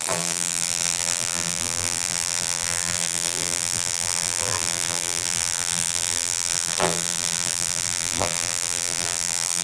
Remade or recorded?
remade